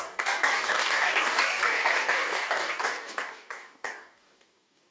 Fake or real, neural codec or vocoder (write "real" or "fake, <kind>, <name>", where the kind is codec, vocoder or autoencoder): fake, codec, DAC